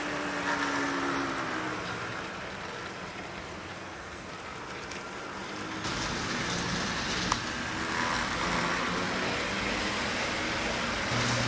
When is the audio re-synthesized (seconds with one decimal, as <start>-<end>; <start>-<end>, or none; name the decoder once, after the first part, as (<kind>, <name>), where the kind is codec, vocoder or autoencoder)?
3.5-4.3 (codec, SNAC)